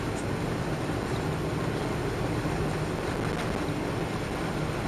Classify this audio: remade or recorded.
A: recorded